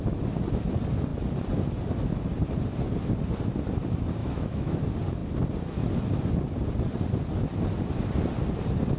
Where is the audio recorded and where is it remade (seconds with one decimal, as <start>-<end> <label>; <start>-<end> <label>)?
0.0-4.2 recorded; 4.2-4.8 remade; 4.8-9.0 recorded